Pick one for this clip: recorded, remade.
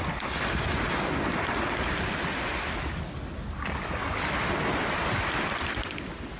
recorded